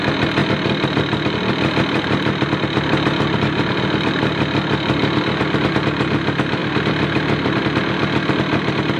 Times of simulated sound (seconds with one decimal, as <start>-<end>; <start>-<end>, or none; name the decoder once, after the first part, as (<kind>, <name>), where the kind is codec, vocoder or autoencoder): 0.4-5.7 (vocoder, BigVGAN v2); 6.6-7.6